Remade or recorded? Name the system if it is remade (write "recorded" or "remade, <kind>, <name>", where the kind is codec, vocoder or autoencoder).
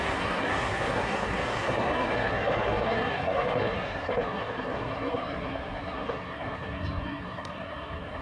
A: remade, codec, SNAC